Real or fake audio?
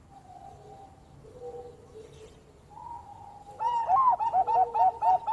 real